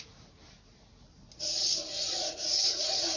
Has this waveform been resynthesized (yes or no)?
no